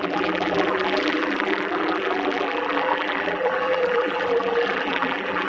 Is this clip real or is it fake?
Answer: fake